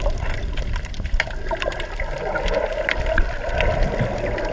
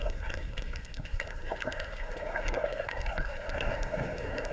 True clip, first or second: first